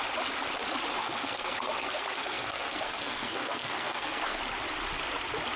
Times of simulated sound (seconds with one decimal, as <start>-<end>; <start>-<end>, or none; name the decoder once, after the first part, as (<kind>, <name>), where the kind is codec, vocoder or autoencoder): 1.0-4.4 (codec, SNAC)